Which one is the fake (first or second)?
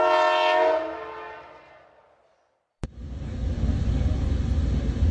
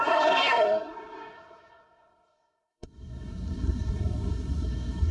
second